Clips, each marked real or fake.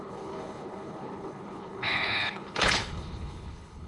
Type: fake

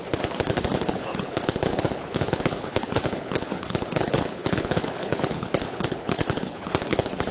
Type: fake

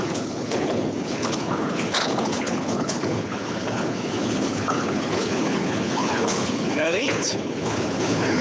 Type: fake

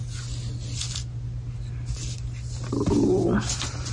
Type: real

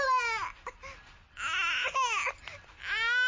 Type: real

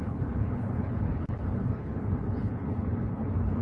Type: fake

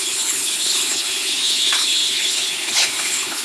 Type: fake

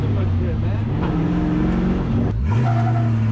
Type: real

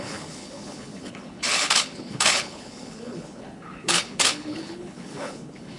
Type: fake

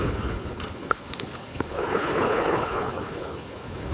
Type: fake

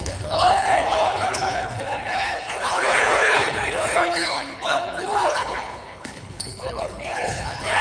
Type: fake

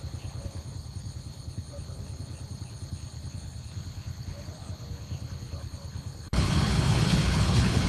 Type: fake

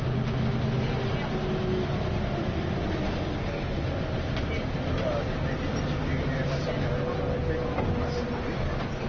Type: real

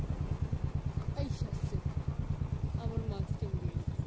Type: real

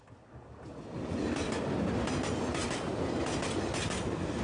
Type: real